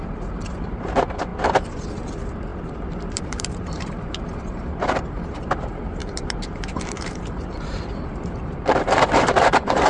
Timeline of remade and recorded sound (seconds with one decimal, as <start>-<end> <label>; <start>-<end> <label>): 0.0-1.3 remade; 1.3-2.0 recorded; 2.0-9.9 remade